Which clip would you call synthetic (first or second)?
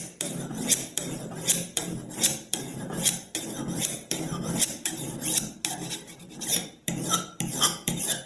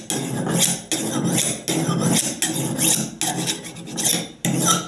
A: first